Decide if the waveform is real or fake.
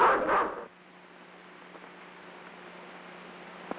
real